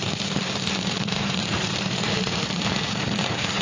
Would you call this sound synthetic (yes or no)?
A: yes